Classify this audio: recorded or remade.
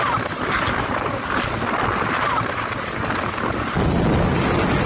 recorded